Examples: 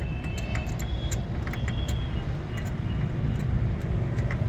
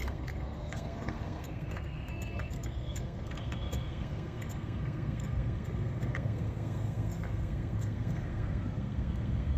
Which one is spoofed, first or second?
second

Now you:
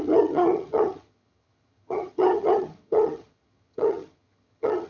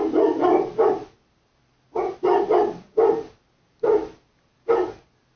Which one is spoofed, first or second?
first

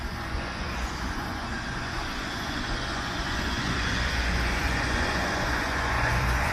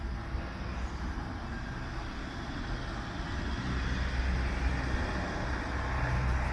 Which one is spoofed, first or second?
first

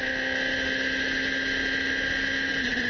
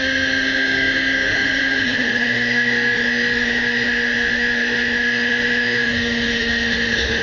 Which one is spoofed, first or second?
second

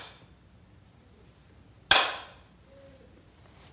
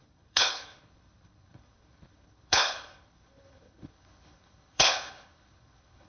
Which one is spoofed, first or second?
second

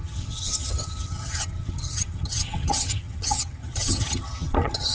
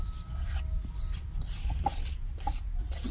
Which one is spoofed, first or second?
first